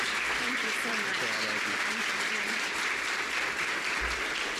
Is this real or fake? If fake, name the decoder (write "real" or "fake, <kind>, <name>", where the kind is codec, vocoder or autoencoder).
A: fake, vocoder, BigVGAN v2